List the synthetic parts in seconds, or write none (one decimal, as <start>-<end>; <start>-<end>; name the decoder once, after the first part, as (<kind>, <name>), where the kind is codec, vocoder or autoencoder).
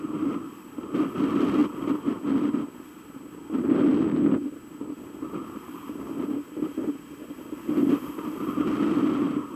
none